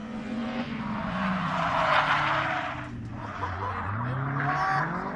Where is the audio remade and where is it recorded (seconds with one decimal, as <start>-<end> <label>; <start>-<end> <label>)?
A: 0.0-2.0 remade; 2.0-3.1 recorded; 3.1-4.0 remade; 4.0-5.2 recorded